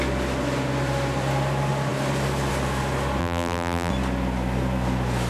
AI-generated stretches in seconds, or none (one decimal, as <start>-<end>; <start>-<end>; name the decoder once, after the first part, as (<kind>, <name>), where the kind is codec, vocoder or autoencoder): 3.2-3.9 (vocoder, BigVGAN v2)